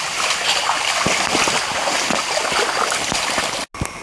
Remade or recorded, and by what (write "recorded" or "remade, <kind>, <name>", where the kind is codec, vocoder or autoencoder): recorded